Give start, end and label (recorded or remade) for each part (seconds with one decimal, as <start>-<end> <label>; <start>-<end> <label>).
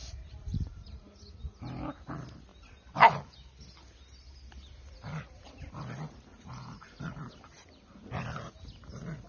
0.0-1.2 remade; 1.2-6.3 recorded; 6.3-7.3 remade; 7.3-9.3 recorded